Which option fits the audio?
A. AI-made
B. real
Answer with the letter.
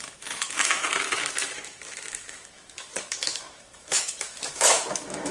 A